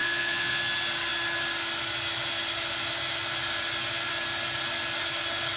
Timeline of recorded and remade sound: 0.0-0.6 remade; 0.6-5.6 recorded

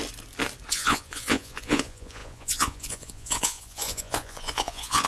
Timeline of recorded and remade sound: 0.0-0.7 recorded; 0.7-5.1 remade

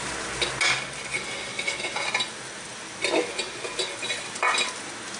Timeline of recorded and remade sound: 0.0-5.2 recorded

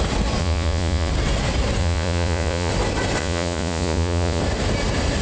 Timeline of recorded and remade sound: 0.0-0.4 recorded; 0.4-1.1 remade; 1.1-1.8 recorded; 1.8-2.7 remade; 2.7-3.2 recorded; 3.2-4.4 remade; 4.4-5.2 recorded

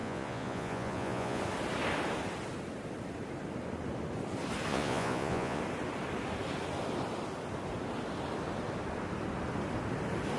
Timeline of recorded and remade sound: 0.0-1.4 remade; 1.4-4.7 recorded; 4.7-5.6 remade; 5.6-10.4 recorded

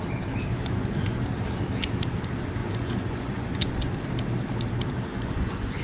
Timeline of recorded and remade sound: 0.0-0.5 recorded; 0.5-1.2 remade; 1.2-2.6 recorded; 2.6-4.0 remade; 4.0-5.1 recorded; 5.1-5.8 remade

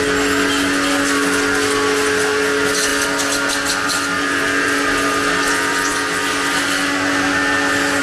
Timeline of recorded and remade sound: 0.0-8.0 recorded

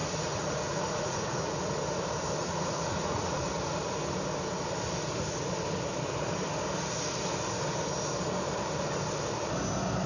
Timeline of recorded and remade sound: 0.0-1.6 remade; 1.6-2.4 recorded; 2.4-3.4 remade; 3.4-10.1 recorded